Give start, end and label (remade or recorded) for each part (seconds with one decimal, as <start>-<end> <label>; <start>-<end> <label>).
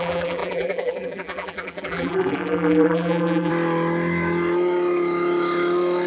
0.0-3.5 remade; 3.5-6.1 recorded